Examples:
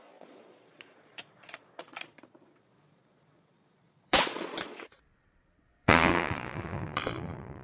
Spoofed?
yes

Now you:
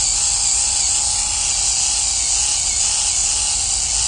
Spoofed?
no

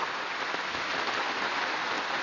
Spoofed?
no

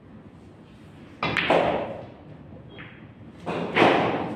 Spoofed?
no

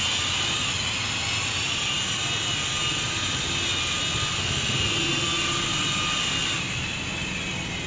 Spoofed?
no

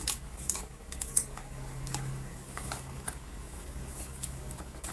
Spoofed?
yes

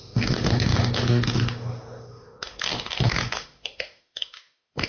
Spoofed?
yes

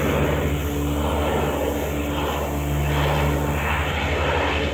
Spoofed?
no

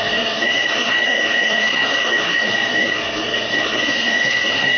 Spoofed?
yes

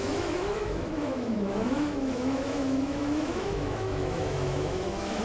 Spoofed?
yes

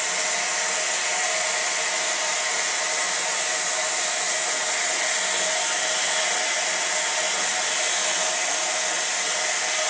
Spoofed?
no